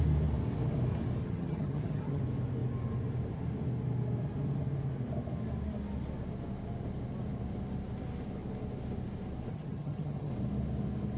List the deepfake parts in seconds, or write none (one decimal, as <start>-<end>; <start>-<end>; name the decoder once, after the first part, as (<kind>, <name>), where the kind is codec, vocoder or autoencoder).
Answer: 1.2-2.2 (vocoder, HiFi-GAN); 9.5-10.3